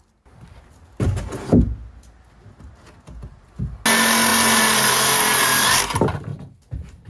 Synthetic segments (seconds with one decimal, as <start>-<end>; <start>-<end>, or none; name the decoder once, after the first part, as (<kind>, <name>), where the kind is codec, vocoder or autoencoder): none

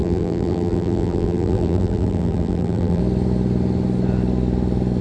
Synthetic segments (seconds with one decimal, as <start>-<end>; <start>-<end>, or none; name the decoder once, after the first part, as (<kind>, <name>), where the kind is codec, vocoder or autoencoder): 0.0-3.0 (vocoder, BigVGAN v2)

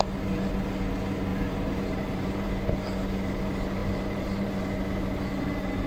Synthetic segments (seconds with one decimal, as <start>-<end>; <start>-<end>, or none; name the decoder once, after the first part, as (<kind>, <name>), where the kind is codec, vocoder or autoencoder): 1.3-2.5 (vocoder, BigVGAN v2); 3.8-4.5

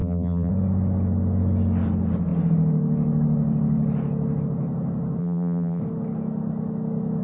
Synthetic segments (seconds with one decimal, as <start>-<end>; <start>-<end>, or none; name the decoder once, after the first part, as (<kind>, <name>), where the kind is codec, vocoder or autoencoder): 0.0-0.5 (vocoder, BigVGAN v2); 5.2-5.8

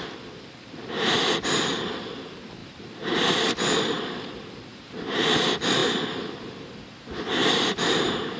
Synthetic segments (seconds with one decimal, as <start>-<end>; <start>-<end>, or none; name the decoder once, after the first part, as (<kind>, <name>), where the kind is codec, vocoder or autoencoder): 2.6-4.3 (vocoder, BigVGAN v2); 4.7-5.3; 5.8-8.4

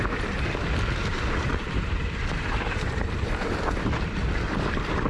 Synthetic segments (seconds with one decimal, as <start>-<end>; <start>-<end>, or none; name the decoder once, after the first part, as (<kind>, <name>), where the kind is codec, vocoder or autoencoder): 1.0-4.0 (vocoder, BigVGAN v2)

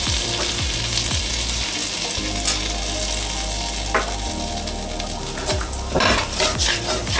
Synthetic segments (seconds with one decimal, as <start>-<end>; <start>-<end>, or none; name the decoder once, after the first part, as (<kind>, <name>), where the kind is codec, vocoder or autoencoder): 0.0-1.8 (vocoder, BigVGAN v2); 5.5-7.2